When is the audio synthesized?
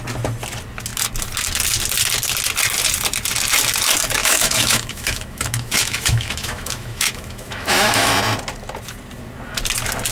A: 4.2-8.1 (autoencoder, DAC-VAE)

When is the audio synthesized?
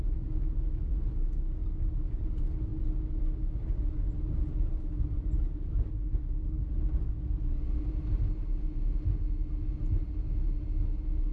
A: none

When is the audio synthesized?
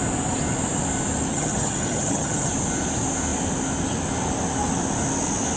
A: 1.3-2.5 (vocoder, HiFi-GAN)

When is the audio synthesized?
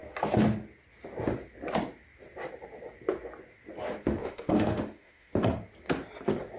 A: 4.0-5.3 (autoencoder, DAC-VAE)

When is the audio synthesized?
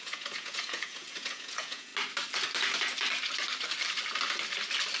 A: 0.0-1.9 (vocoder, Vocos)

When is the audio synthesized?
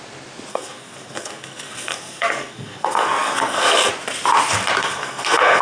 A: 0.5-3.9 (codec, SNAC); 4.8-5.6